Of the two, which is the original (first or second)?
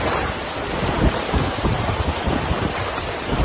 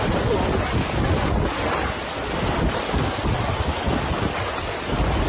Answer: second